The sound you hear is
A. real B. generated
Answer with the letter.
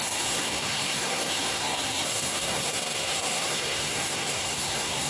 B